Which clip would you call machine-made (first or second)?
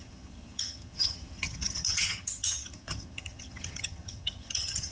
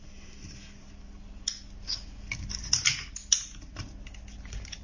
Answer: first